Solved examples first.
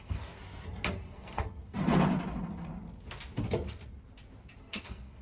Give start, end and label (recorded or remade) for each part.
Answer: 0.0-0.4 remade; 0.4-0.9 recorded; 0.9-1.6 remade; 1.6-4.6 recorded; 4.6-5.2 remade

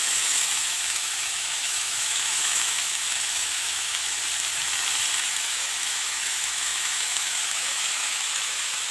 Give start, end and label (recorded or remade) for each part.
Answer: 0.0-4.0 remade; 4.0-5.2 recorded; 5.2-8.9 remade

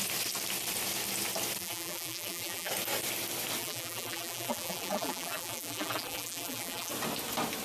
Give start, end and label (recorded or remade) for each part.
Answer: 0.0-1.6 recorded; 1.6-2.7 remade; 2.7-3.6 recorded; 3.6-6.9 remade; 6.9-7.6 recorded

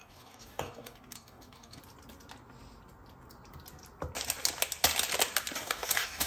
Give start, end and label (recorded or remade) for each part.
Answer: 0.0-1.8 remade; 1.8-5.6 recorded; 5.6-6.3 remade